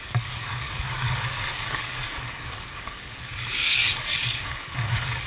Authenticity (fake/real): fake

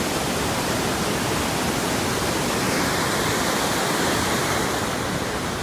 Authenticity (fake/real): real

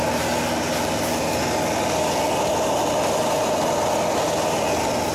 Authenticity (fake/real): real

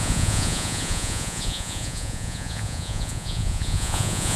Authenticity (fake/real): fake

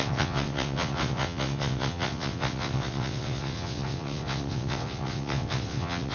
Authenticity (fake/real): fake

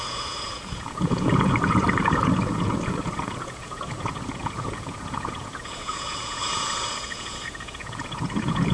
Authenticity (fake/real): fake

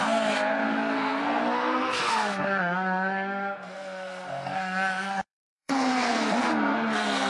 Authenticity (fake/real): fake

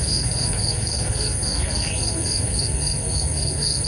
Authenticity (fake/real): fake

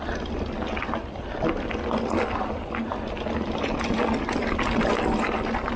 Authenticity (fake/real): real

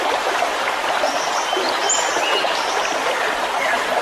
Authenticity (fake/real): real